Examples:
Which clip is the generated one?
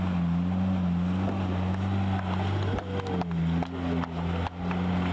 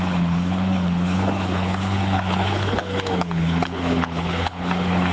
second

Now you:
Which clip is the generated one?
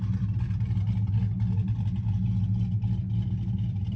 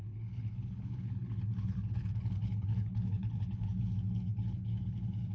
second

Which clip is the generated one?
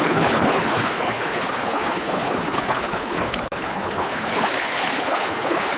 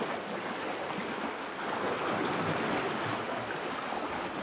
first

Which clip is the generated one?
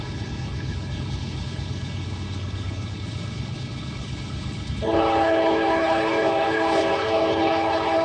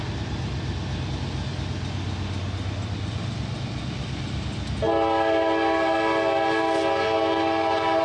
first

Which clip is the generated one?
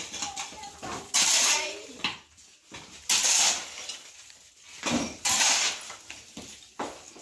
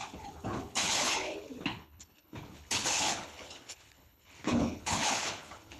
second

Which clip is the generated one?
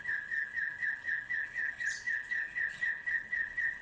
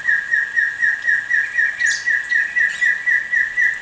first